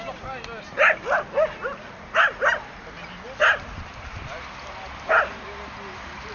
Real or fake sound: real